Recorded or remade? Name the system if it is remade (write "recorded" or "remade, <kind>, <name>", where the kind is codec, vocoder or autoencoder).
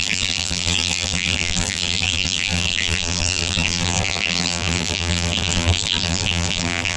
remade, vocoder, BigVGAN v2